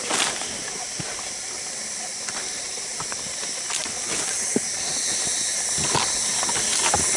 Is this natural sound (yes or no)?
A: yes